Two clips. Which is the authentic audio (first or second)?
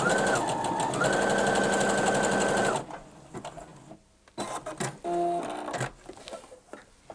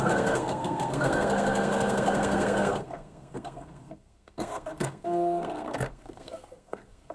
first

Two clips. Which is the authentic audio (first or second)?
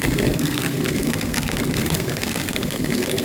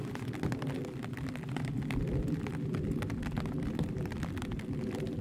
second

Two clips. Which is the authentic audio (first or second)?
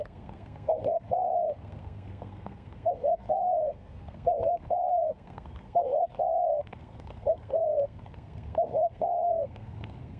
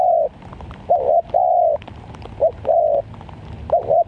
second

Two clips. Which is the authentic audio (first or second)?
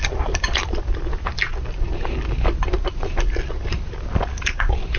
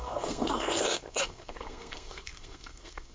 first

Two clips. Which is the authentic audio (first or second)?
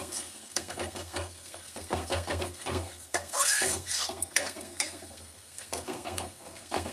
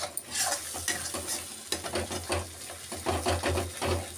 second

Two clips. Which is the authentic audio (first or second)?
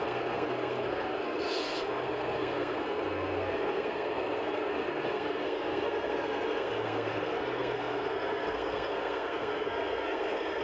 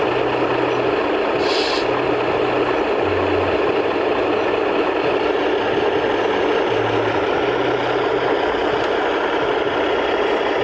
second